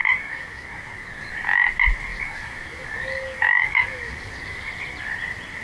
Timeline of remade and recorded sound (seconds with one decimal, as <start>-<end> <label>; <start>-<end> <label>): 0.0-1.3 remade; 1.3-2.1 recorded; 2.1-4.7 remade; 4.7-5.6 recorded